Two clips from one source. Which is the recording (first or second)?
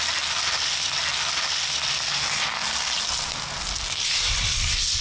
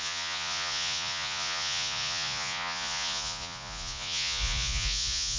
first